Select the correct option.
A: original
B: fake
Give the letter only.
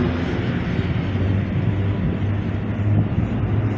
A